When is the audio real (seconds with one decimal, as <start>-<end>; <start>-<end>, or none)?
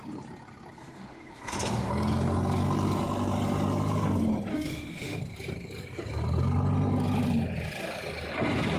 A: 0.0-0.8; 1.9-4.5; 5.2-8.8